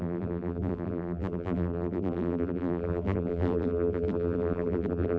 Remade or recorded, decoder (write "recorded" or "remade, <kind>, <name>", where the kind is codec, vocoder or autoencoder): remade, vocoder, BigVGAN v2